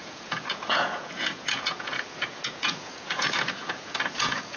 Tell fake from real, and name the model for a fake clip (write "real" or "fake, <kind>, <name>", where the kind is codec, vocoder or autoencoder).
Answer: fake, vocoder, Vocos